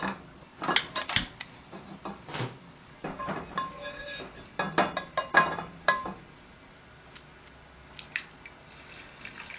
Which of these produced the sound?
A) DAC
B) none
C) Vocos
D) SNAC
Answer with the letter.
B